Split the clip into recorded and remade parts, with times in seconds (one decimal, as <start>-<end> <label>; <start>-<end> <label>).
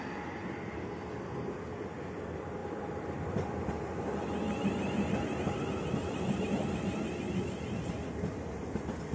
0.0-9.1 recorded